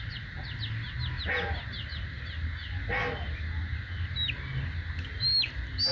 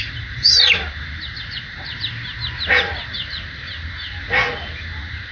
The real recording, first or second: first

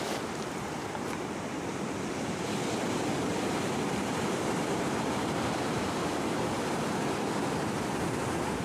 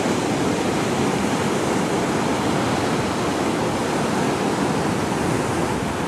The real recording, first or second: second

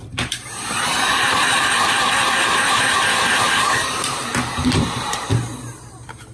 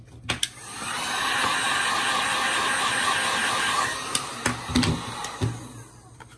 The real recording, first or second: second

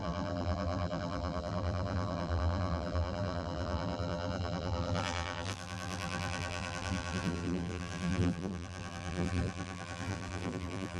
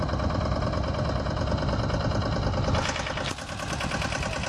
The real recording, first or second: second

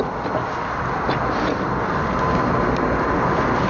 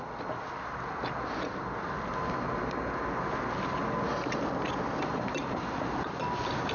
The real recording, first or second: second